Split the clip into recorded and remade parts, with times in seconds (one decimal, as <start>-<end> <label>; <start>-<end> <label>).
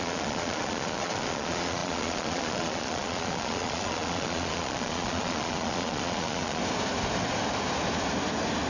0.0-6.6 remade; 6.6-8.7 recorded